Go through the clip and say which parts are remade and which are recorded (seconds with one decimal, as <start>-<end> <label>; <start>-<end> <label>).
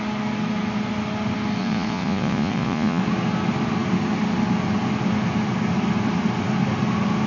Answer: 0.0-1.6 recorded; 1.6-3.0 remade; 3.0-7.3 recorded